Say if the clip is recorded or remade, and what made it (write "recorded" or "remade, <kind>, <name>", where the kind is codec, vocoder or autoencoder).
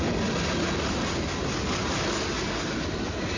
recorded